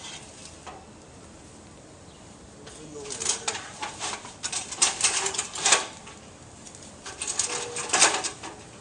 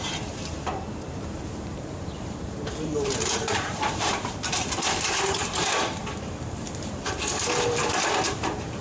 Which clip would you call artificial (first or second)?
second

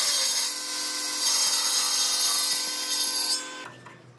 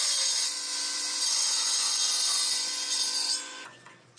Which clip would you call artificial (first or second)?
second